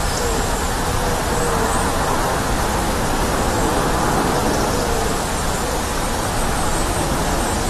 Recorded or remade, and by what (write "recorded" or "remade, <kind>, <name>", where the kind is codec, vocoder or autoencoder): recorded